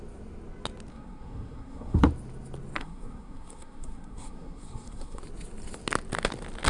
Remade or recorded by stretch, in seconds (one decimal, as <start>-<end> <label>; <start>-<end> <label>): 0.0-0.9 recorded; 0.9-2.0 remade; 2.0-2.8 recorded; 2.8-5.2 remade; 5.2-6.7 recorded